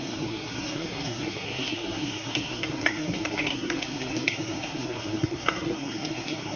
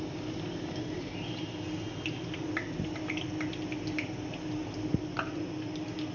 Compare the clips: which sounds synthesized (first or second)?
first